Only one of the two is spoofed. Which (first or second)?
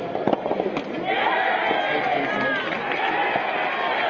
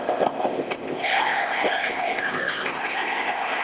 second